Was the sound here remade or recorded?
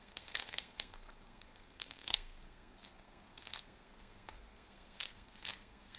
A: remade